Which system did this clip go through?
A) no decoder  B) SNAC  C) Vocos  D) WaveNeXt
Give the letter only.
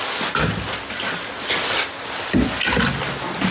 A